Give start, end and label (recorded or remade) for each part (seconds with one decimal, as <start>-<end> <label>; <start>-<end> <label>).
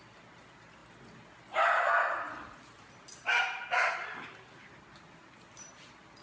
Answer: 0.0-6.2 recorded